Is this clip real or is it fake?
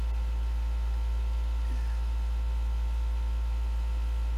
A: real